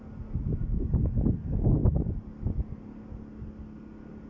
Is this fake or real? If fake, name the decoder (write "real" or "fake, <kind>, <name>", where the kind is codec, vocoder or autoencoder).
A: real